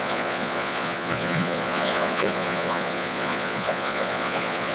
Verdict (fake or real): fake